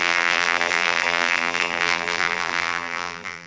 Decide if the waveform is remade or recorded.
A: remade